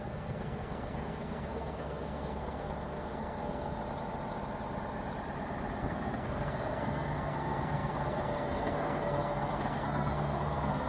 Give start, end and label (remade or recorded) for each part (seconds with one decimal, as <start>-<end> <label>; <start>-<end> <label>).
0.0-3.8 remade; 3.8-5.8 recorded; 5.8-10.9 remade